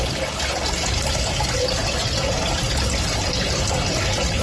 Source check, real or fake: real